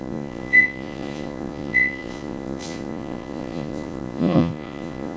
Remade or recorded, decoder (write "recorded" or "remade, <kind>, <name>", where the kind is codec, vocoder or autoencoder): remade, vocoder, Vocos